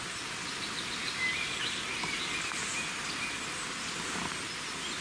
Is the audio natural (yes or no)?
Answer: yes